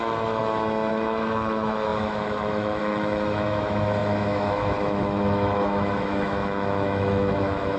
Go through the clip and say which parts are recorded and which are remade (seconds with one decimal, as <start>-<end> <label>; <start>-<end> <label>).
0.0-7.8 remade